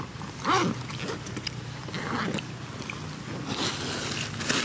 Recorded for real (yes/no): yes